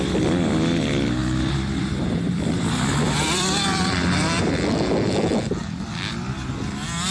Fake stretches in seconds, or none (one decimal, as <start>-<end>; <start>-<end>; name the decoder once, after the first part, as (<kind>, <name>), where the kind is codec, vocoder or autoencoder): 1.2-4.0 (vocoder, BigVGAN v2)